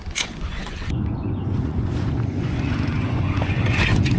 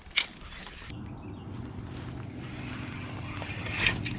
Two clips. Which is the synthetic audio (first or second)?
first